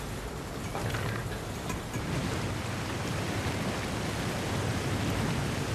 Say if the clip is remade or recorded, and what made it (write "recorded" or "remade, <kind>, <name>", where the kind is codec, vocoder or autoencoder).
recorded